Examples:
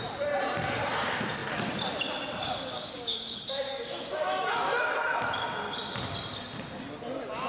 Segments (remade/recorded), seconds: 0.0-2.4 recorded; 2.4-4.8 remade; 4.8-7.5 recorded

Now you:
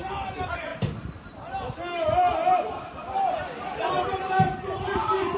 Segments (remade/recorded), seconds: 0.0-5.4 recorded

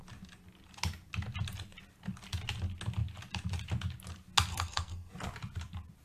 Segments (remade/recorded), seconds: 0.0-4.5 recorded; 4.5-5.1 remade; 5.1-6.0 recorded

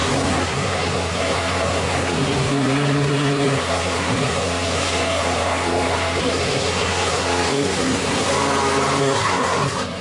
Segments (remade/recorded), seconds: 0.0-8.3 remade; 8.3-9.0 recorded; 9.0-10.0 remade